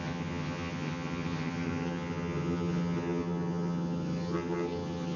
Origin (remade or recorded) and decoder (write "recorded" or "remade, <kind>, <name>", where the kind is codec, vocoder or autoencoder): remade, vocoder, HiFi-GAN